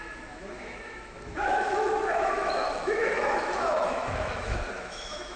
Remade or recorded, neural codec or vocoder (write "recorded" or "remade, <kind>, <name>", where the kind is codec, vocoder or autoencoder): remade, autoencoder, DAC-VAE